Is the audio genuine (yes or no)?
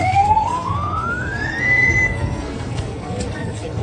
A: no